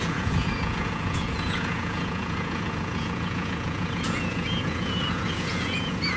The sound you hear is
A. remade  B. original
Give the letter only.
A